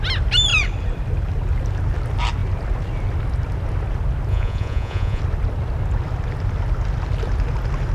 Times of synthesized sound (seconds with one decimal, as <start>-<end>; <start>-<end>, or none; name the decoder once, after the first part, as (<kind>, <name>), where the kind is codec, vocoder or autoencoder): 4.3-5.2 (vocoder, Vocos)